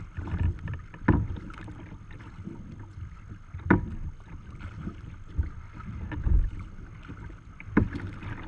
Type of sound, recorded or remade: recorded